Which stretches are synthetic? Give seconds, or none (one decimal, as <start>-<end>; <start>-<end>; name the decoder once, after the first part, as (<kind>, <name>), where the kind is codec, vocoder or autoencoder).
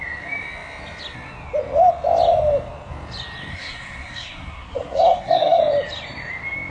3.5-5.6 (codec, SNAC)